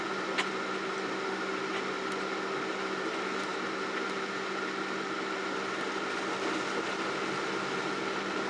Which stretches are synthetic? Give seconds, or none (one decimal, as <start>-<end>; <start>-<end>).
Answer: none